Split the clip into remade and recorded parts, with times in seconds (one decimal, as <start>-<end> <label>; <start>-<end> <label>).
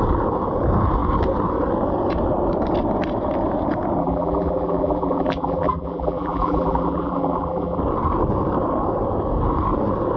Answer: 0.0-4.0 recorded; 4.0-7.8 remade; 7.8-10.2 recorded